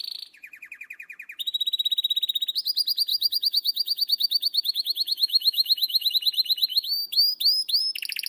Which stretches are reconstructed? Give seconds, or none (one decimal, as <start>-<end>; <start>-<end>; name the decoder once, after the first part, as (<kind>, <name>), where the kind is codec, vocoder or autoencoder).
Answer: 3.1-6.1 (autoencoder, DAC-VAE); 6.7-7.8